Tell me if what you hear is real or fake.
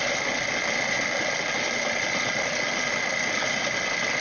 real